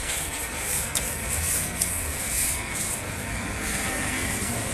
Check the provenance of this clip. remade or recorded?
remade